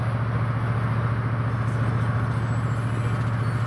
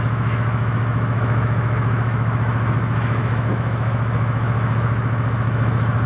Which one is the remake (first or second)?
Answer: second